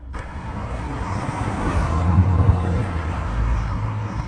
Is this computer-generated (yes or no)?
yes